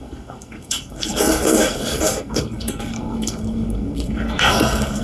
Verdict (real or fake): fake